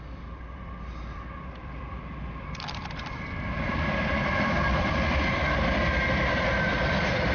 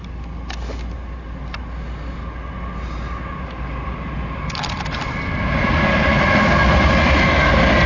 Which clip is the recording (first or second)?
second